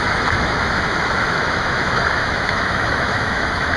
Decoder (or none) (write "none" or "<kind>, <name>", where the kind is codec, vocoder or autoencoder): autoencoder, DAC-VAE